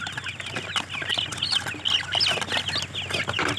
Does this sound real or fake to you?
real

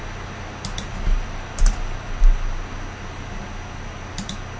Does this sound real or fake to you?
real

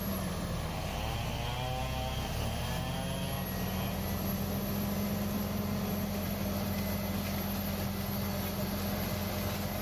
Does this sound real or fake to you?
real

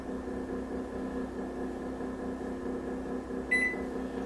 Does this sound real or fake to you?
real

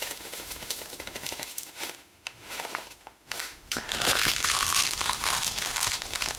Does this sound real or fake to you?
fake